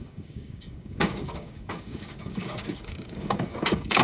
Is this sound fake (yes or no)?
yes